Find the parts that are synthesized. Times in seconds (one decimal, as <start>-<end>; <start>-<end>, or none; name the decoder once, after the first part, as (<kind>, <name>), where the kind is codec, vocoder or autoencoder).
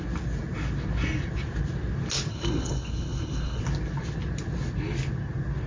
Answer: 2.3-3.6 (codec, HILCodec)